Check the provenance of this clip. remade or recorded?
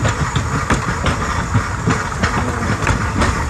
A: recorded